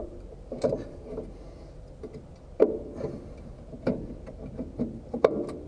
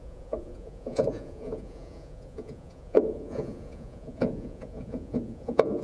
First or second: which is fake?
second